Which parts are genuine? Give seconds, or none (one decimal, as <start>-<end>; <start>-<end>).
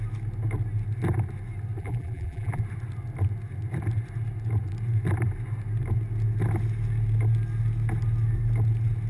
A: 0.0-1.8; 2.6-9.1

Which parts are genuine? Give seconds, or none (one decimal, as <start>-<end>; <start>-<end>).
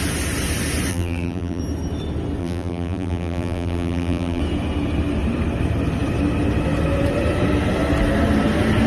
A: 0.0-0.9; 1.6-2.4; 4.4-8.9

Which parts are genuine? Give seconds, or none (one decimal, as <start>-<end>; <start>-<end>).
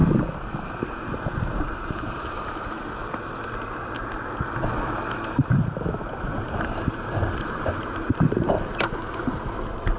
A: 2.7-5.4; 9.1-10.0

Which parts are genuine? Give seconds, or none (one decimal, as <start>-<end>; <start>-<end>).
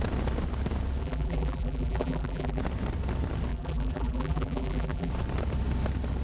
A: 0.0-1.0; 2.6-3.5; 5.1-6.2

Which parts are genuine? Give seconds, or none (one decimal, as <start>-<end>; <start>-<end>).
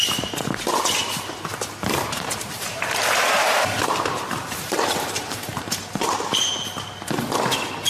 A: 0.0-1.5; 5.8-7.9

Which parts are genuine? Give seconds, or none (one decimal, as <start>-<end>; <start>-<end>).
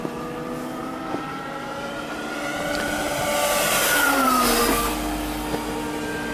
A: 0.0-0.8; 4.6-6.3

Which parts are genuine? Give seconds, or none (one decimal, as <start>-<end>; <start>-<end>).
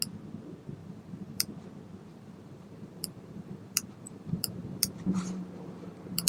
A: 0.0-0.8; 1.5-2.1